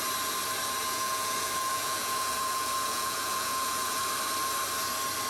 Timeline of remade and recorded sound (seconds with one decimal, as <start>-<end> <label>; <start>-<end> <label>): 0.0-0.8 recorded; 0.8-4.0 remade; 4.0-5.3 recorded